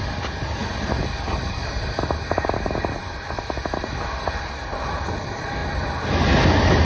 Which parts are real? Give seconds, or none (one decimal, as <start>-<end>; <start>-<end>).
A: 0.0-6.8